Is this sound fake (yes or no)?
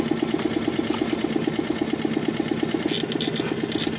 no